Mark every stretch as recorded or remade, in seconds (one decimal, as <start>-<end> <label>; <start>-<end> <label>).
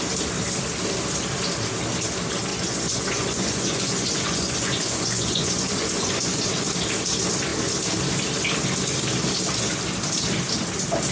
0.0-2.5 recorded; 2.5-6.7 remade; 6.7-11.1 recorded